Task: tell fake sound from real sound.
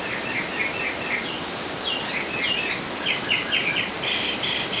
real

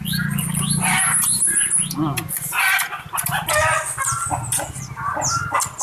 real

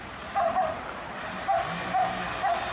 real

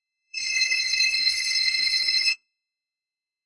fake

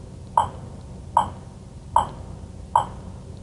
real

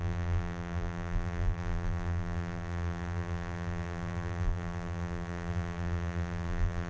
fake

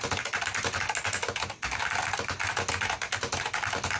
real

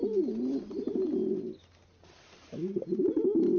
real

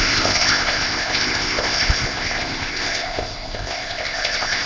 fake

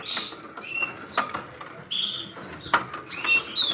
real